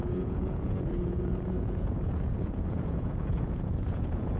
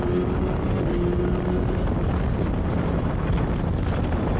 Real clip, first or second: second